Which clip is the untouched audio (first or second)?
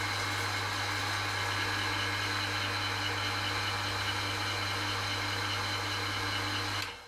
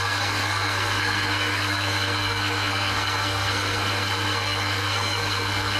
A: first